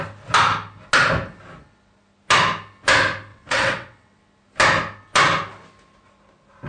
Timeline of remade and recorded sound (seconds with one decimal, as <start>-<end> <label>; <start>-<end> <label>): 0.0-3.3 recorded; 3.3-4.2 remade; 4.2-6.7 recorded